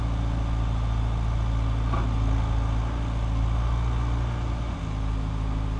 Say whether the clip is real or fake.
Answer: real